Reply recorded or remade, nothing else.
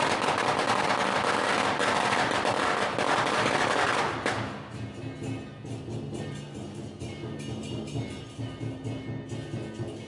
recorded